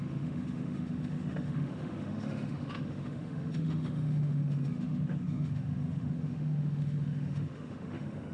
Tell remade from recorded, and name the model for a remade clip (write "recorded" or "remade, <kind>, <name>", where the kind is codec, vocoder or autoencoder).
remade, autoencoder, DAC-VAE